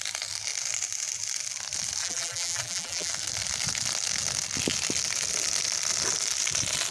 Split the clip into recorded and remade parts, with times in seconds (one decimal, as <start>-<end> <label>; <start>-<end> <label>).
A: 0.0-2.0 recorded; 2.0-3.1 remade; 3.1-6.9 recorded